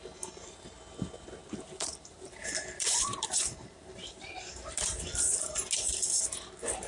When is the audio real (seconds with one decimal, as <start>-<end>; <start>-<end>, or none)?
0.0-1.4; 5.5-6.9